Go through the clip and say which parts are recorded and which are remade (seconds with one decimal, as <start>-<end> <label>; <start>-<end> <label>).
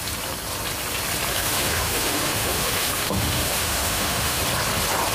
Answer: 0.0-1.3 recorded; 1.3-4.4 remade; 4.4-5.1 recorded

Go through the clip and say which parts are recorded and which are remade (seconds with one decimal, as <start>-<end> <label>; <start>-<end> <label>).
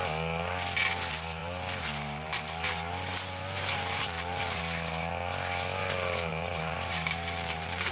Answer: 0.0-1.4 recorded; 1.4-4.6 remade; 4.6-6.3 recorded; 6.3-7.9 remade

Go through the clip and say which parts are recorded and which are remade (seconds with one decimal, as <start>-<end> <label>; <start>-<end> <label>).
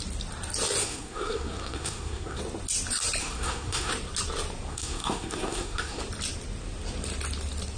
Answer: 0.0-0.8 recorded; 0.8-2.4 remade; 2.4-3.2 recorded; 3.2-3.9 remade; 3.9-4.7 recorded; 4.7-6.0 remade; 6.0-7.8 recorded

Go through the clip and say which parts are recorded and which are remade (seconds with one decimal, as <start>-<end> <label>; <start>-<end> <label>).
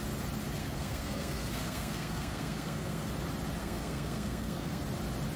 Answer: 0.0-0.6 recorded; 0.6-3.1 remade; 3.1-3.6 recorded; 3.6-4.8 remade; 4.8-5.4 recorded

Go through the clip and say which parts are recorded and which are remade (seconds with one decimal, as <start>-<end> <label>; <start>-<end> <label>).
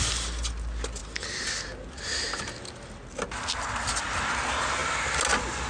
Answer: 0.0-5.7 recorded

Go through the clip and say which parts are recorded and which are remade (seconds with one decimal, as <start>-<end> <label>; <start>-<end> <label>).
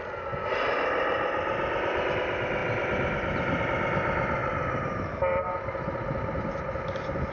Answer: 0.0-4.4 recorded; 4.4-7.3 remade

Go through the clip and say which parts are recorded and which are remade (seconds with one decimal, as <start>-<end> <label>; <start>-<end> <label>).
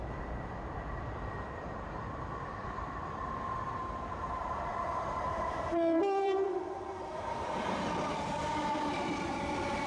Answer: 0.0-9.9 remade